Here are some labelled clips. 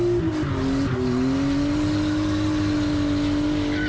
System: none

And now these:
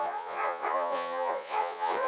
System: vocoder, Vocos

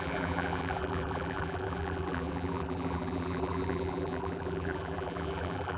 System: vocoder, BigVGAN v2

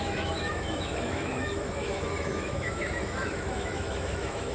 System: autoencoder, DAC-VAE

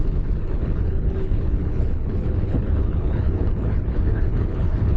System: codec, HILCodec